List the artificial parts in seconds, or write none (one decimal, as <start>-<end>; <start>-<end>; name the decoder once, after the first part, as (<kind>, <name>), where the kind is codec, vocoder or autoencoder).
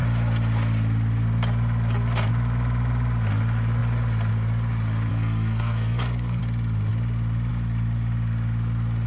5.1-6.4 (codec, SNAC)